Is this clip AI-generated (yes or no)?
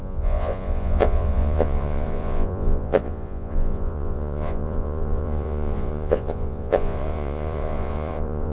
yes